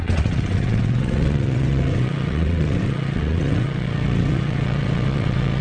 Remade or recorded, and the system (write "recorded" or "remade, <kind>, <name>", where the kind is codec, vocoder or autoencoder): remade, vocoder, WaveNeXt